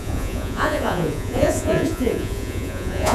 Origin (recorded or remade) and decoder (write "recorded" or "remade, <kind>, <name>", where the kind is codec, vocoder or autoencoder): remade, vocoder, Vocos